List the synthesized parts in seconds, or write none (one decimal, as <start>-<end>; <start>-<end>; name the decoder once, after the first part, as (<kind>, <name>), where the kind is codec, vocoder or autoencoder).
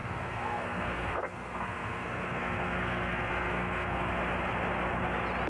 0.0-4.1 (codec, SNAC)